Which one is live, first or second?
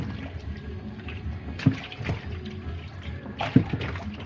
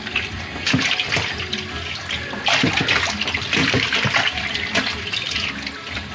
first